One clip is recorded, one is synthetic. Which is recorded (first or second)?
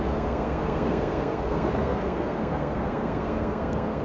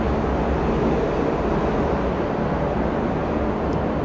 second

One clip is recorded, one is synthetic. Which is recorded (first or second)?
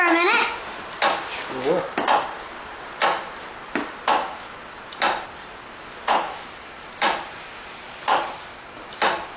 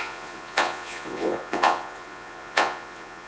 first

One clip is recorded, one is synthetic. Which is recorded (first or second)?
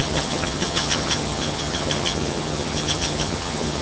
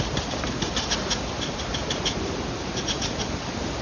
second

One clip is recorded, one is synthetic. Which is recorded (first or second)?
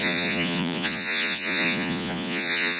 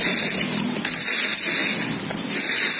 second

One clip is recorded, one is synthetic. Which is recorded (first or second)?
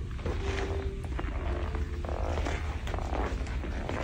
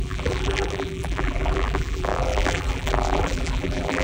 first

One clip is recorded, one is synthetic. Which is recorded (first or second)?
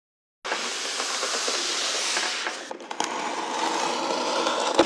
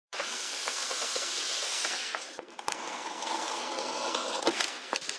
first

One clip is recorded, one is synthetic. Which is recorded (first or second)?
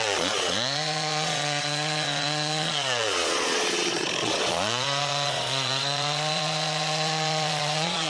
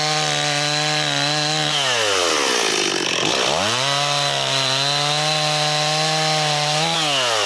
second